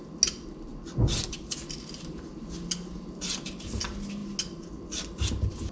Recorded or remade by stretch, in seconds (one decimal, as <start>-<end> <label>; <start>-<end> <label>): 0.0-5.7 recorded